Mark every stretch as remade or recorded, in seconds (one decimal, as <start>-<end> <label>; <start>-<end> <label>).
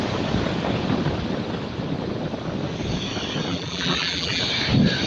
0.0-3.5 recorded; 3.5-4.4 remade; 4.4-5.1 recorded